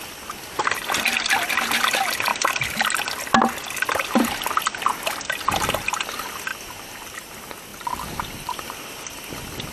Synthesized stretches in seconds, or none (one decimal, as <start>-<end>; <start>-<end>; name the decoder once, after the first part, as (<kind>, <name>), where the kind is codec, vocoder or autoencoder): 2.3-3.1 (vocoder, BigVGAN v2); 6.5-7.3; 7.7-8.5